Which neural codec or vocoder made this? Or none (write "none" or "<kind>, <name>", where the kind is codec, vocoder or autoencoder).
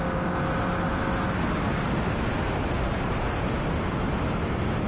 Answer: none